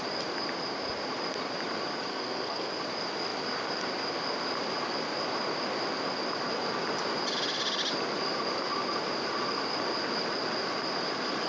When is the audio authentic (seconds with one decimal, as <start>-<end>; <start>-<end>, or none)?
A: 0.0-2.1; 2.7-11.5